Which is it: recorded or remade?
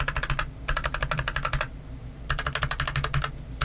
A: recorded